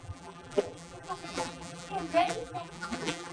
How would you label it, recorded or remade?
remade